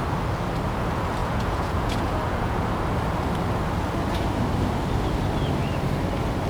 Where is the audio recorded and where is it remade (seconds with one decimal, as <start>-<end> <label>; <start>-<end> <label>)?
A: 0.0-1.2 recorded; 1.2-2.6 remade; 2.6-6.5 recorded